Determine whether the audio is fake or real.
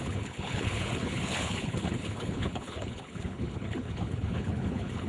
fake